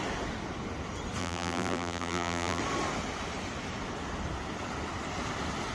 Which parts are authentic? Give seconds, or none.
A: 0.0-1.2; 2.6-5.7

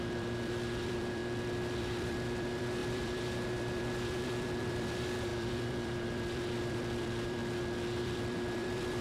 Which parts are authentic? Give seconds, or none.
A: 1.2-1.8; 7.4-8.0

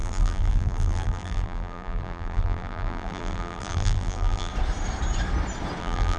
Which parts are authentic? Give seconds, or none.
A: 4.5-5.8

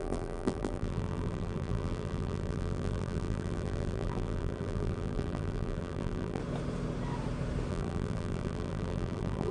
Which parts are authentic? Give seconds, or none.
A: 6.4-7.7

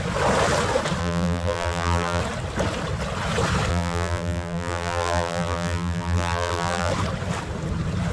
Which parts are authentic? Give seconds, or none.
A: 0.0-1.0; 2.2-3.7; 6.9-8.1

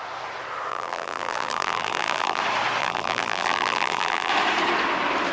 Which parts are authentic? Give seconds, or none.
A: 0.0-0.7; 2.4-2.8; 4.3-5.3

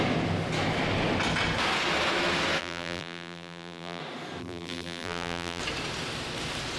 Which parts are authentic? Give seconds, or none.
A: 0.0-2.6; 4.0-4.4; 5.6-6.8

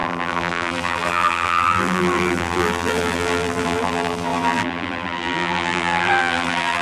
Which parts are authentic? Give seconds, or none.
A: none